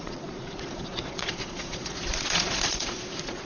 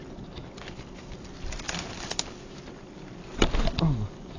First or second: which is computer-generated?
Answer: first